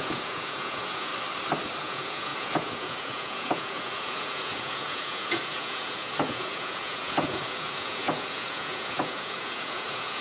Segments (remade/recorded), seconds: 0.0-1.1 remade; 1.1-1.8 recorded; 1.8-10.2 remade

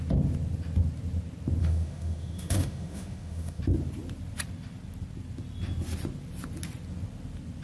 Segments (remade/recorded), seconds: 0.0-1.6 recorded; 1.6-3.6 remade; 3.6-7.6 recorded

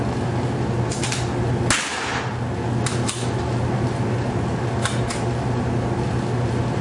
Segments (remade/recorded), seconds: 0.0-6.8 recorded

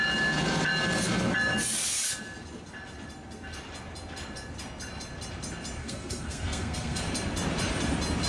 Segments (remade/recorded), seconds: 0.0-5.8 recorded; 5.8-7.0 remade; 7.0-8.3 recorded

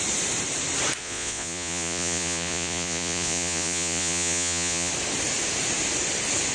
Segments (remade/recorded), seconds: 0.0-1.0 recorded; 1.0-4.9 remade; 4.9-6.5 recorded

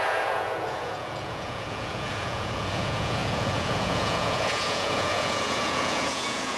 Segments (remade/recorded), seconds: 0.0-6.6 remade

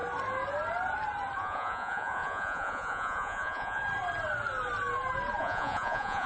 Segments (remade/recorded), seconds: 0.0-1.4 recorded; 1.4-3.8 remade; 3.8-5.4 recorded; 5.4-6.3 remade